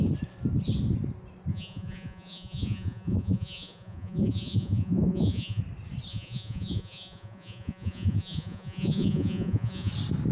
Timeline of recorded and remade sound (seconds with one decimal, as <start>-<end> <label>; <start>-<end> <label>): 0.0-1.5 recorded; 1.5-5.6 remade; 5.6-6.1 recorded; 6.1-9.9 remade; 9.9-10.3 recorded